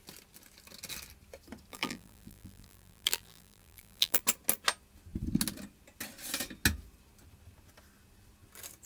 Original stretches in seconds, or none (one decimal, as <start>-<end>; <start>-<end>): 0.0-1.7; 4.2-8.9